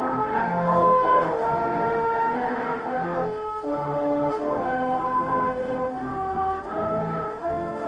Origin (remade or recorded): remade